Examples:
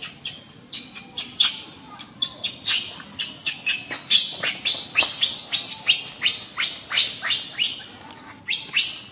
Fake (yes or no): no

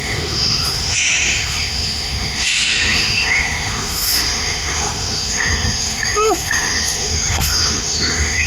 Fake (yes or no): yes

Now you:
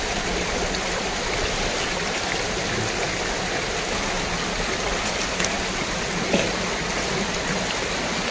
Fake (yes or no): no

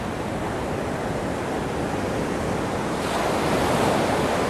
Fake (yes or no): no